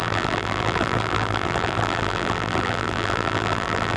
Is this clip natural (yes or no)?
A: no